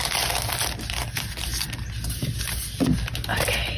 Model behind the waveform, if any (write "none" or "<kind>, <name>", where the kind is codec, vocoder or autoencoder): none